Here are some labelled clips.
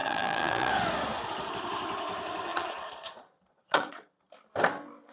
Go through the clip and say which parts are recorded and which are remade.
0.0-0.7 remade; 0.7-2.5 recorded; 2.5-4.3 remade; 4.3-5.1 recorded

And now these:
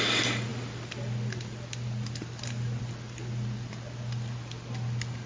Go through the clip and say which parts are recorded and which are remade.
0.0-5.3 recorded

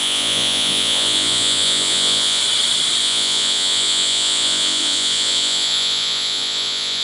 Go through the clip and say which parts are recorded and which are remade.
0.0-2.4 remade; 2.4-3.0 recorded; 3.0-7.0 remade

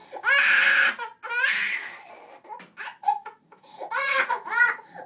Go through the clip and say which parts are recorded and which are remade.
0.0-2.8 recorded; 2.8-5.1 remade

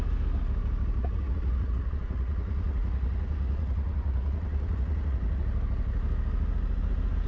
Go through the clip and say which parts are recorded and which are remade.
0.0-1.0 recorded; 1.0-5.4 remade; 5.4-7.3 recorded

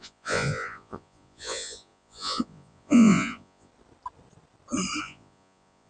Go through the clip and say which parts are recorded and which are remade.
0.0-3.7 remade; 3.7-5.0 recorded; 5.0-5.9 remade